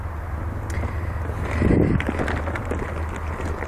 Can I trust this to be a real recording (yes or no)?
yes